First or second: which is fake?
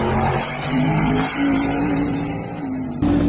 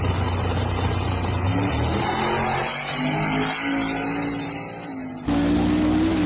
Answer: first